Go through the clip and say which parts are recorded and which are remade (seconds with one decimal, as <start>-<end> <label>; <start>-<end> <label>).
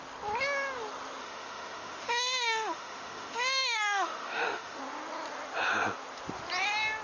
0.0-1.2 recorded; 1.2-4.8 remade; 4.8-7.0 recorded